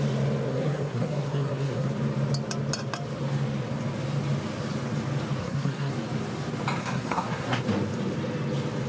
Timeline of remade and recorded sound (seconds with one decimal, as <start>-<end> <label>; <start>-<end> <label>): 0.0-0.5 recorded; 0.5-1.9 remade; 1.9-5.4 recorded; 5.4-5.9 remade; 5.9-6.8 recorded; 6.8-7.6 remade; 7.6-8.9 recorded